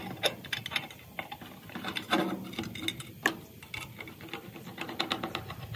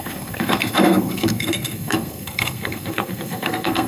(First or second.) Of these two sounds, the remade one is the second